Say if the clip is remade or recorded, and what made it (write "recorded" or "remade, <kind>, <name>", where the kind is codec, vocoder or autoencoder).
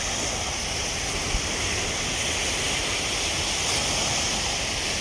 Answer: recorded